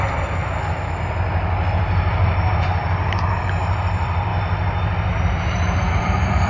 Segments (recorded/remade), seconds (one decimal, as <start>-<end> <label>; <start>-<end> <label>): 0.0-0.4 remade; 0.4-1.7 recorded; 1.7-4.3 remade; 4.3-5.1 recorded; 5.1-6.5 remade